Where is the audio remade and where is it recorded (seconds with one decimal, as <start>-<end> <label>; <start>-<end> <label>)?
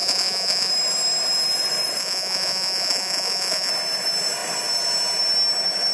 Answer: 0.0-0.7 remade; 0.7-2.0 recorded; 2.0-3.7 remade; 3.7-5.9 recorded